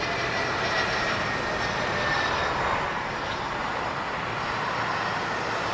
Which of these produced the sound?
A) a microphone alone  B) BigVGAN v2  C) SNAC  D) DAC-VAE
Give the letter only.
A